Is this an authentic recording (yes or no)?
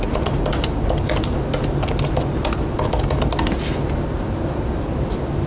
yes